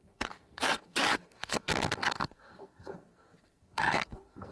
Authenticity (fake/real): fake